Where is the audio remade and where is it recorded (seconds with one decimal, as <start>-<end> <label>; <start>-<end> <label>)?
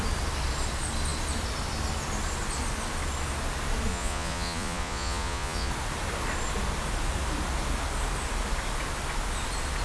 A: 0.0-3.9 recorded; 3.9-5.7 remade; 5.7-9.8 recorded